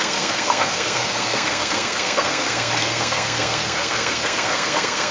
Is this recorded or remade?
remade